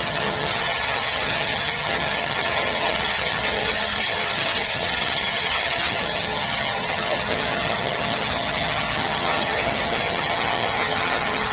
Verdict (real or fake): fake